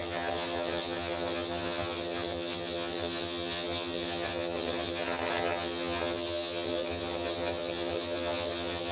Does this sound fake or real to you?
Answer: fake